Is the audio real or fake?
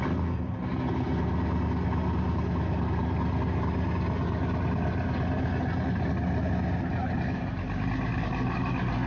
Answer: real